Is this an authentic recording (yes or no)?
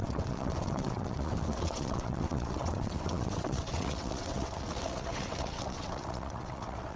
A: no